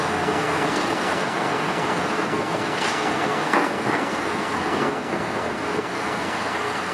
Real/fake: fake